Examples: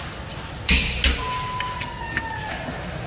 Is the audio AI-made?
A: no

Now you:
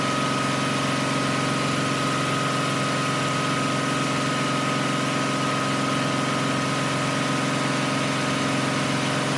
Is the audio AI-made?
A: no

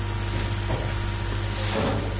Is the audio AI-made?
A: no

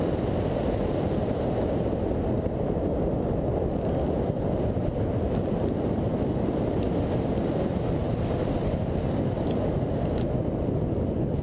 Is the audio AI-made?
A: no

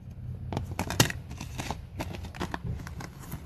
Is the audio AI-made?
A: no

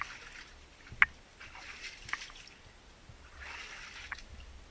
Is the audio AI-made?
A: no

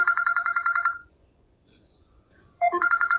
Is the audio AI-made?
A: yes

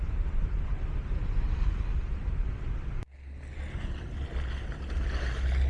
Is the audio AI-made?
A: no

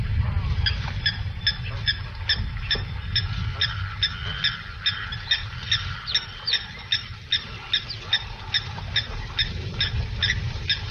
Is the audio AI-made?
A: no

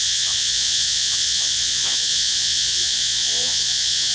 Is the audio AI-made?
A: yes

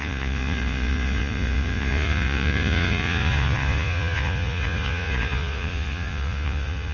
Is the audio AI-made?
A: yes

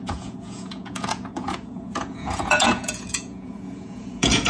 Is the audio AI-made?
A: yes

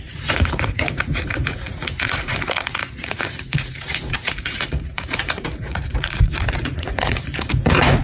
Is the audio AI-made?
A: yes